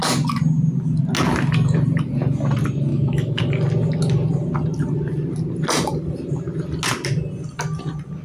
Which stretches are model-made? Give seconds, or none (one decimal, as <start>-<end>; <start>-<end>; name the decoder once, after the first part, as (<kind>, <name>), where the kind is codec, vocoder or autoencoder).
2.9-3.4 (autoencoder, DAC-VAE)